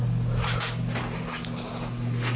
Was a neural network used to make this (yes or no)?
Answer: no